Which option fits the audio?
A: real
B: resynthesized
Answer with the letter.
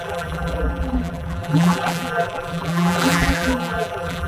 B